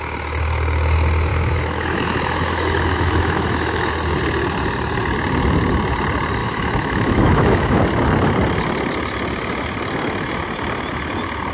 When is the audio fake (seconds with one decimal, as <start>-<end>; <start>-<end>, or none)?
1.3-3.9; 6.4-7.8